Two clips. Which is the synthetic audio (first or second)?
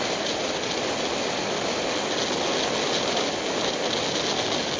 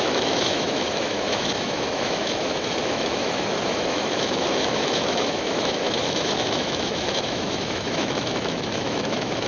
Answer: second